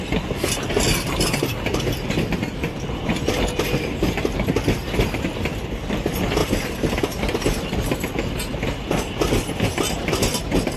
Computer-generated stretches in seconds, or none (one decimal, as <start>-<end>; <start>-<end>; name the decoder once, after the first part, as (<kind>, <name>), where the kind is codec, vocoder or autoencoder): 6.4-8.1 (vocoder, BigVGAN v2)